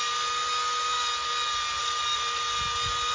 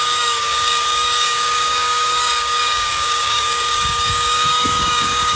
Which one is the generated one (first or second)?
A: second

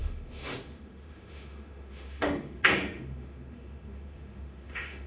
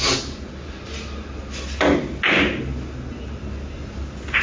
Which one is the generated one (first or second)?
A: first